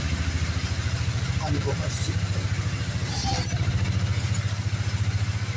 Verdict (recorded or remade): recorded